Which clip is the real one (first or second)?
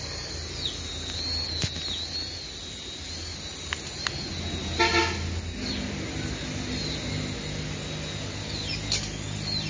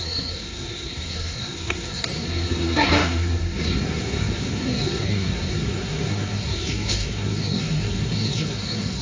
first